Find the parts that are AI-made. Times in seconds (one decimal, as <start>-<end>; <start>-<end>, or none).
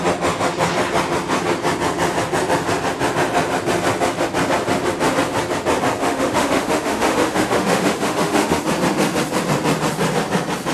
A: 6.0-8.6